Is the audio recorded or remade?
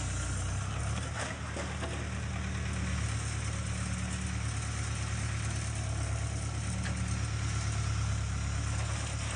recorded